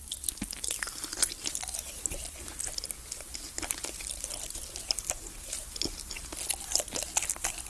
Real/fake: real